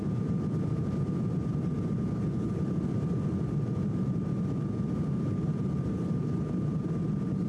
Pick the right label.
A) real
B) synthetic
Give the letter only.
B